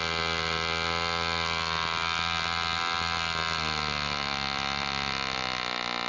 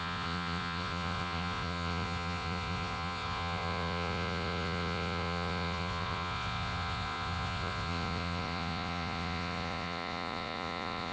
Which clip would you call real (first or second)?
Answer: first